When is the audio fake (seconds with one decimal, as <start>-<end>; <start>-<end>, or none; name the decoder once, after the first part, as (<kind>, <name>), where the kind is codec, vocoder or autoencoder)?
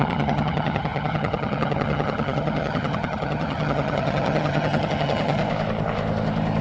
0.0-5.4 (vocoder, HiFi-GAN)